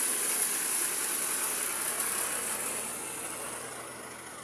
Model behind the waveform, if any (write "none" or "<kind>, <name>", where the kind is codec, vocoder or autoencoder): none